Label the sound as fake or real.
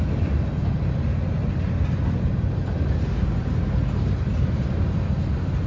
real